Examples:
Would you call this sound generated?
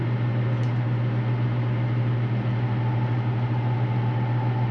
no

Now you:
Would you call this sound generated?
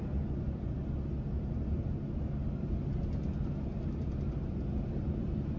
no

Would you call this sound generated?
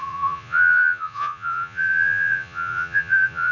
yes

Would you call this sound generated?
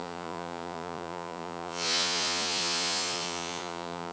yes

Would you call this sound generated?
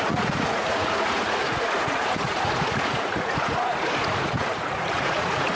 yes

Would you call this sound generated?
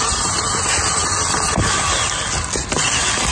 no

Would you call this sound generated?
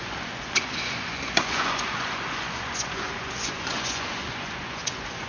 yes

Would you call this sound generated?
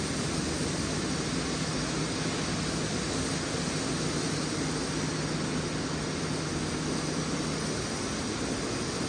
no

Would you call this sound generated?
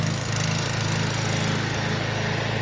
no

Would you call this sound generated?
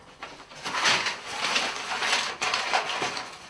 yes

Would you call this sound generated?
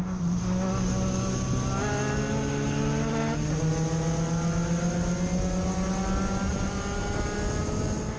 no